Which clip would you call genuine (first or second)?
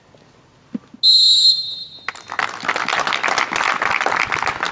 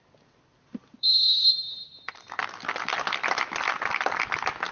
first